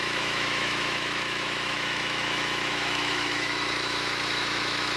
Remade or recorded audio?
remade